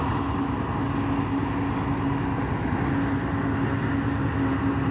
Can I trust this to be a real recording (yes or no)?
yes